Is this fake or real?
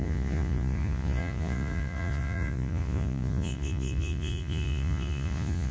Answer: fake